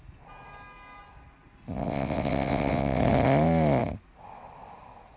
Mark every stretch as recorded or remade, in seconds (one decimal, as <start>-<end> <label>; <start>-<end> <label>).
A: 0.0-1.8 recorded; 1.8-3.0 remade; 3.0-5.2 recorded